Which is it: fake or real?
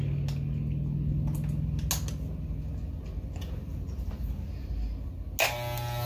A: real